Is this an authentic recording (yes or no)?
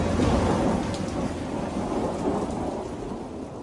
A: yes